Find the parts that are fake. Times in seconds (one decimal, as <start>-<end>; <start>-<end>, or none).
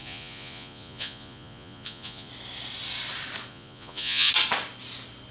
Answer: 0.0-2.3; 3.5-4.3